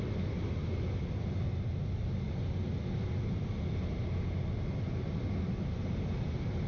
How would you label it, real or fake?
real